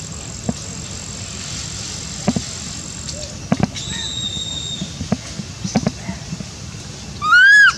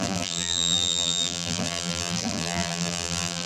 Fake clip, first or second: second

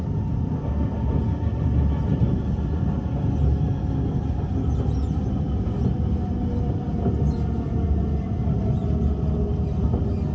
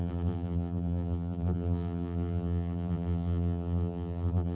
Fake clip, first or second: second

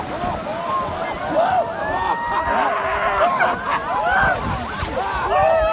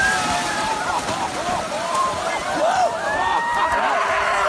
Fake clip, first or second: second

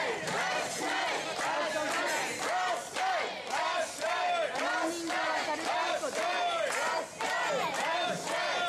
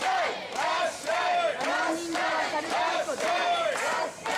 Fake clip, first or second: second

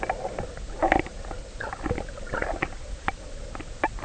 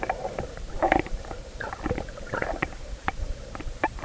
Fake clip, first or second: second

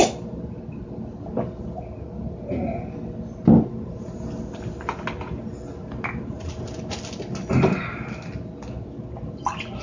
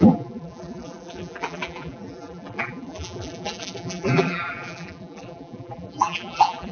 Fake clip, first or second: second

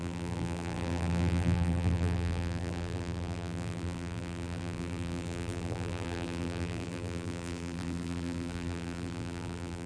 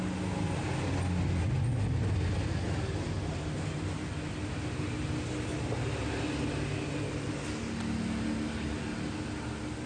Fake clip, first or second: first